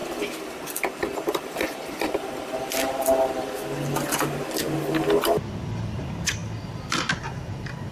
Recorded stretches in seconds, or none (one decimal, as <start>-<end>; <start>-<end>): 0.0-7.9